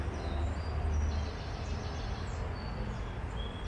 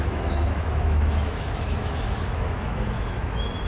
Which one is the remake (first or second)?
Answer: second